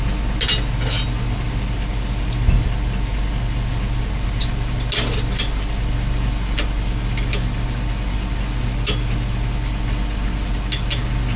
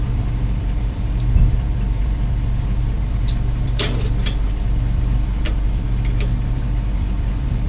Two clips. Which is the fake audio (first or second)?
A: second